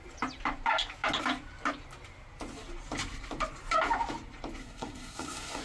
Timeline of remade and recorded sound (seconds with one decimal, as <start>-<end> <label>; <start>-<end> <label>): 0.0-4.6 recorded; 4.6-5.6 remade